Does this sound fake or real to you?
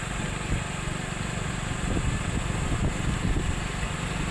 real